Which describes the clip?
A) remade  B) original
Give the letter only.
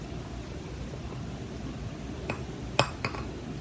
B